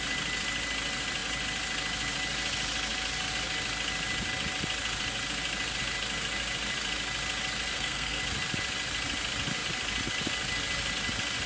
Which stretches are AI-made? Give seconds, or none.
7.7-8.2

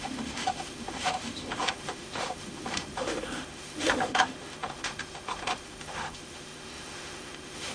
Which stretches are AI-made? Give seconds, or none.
0.0-7.7

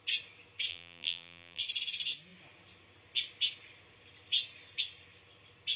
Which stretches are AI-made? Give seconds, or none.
0.7-1.6

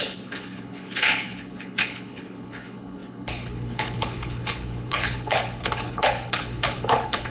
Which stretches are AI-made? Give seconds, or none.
0.0-7.3